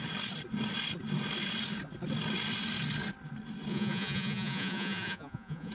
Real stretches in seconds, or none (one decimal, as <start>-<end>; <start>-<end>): 0.0-3.7